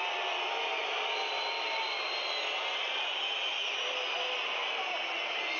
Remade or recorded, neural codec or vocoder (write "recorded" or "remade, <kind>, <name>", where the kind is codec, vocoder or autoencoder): recorded